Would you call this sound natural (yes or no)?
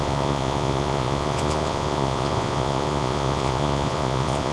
no